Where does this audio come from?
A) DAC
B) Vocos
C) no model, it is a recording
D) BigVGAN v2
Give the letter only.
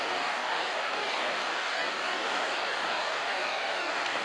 A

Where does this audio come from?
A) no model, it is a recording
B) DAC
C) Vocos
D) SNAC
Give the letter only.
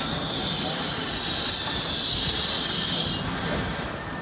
A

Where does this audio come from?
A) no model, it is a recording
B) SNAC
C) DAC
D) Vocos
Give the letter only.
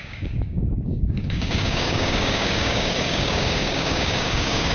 C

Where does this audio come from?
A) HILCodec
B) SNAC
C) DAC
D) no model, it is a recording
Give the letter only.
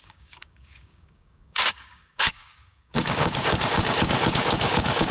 C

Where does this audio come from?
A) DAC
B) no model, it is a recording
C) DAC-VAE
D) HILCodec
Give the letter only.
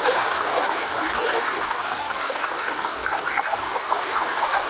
A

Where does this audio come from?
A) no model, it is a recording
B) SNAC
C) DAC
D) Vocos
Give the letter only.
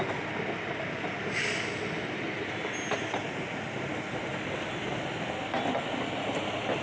A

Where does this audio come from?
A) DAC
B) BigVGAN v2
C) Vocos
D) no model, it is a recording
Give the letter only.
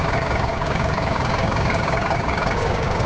A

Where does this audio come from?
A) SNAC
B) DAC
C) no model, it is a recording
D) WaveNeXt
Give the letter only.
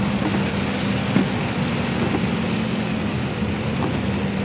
C